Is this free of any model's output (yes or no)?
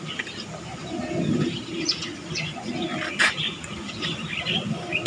yes